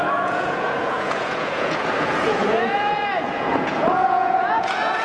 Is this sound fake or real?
fake